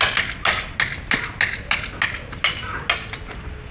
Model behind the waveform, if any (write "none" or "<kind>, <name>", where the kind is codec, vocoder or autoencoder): none